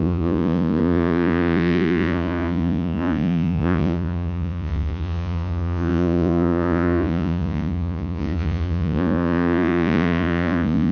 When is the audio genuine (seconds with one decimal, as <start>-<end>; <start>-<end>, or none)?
none